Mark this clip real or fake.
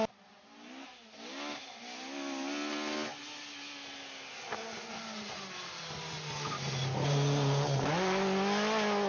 real